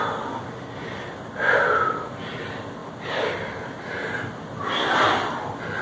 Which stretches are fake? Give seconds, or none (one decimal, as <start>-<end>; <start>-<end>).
none